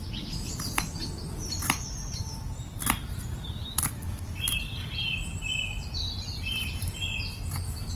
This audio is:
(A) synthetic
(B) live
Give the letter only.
B